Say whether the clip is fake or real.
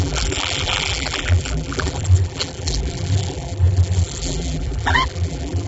fake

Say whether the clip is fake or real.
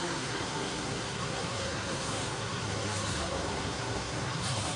fake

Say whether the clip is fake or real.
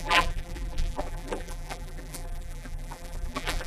fake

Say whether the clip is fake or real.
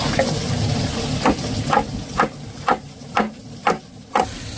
real